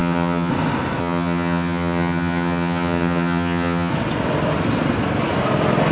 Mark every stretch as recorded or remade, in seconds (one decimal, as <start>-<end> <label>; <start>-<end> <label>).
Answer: 0.0-0.5 remade; 0.5-1.0 recorded; 1.0-3.9 remade; 3.9-5.9 recorded

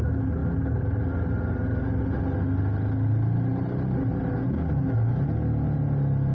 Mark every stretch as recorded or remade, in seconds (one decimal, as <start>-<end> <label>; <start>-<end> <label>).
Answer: 0.0-6.3 recorded

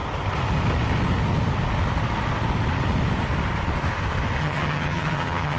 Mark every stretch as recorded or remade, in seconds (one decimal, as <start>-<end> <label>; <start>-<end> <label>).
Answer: 0.0-4.4 recorded; 4.4-5.6 remade

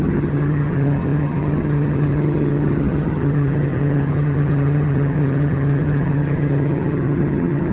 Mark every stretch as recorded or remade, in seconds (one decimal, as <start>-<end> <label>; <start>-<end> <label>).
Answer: 0.0-7.7 remade

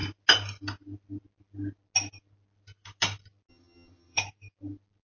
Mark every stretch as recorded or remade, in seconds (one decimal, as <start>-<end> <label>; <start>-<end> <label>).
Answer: 0.0-3.5 recorded; 3.5-4.2 remade; 4.2-5.0 recorded